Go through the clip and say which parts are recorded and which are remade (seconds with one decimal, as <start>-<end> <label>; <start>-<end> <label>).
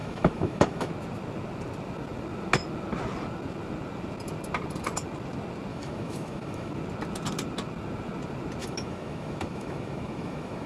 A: 0.0-0.9 remade; 0.9-5.7 recorded; 5.7-6.7 remade; 6.7-8.6 recorded; 8.6-10.7 remade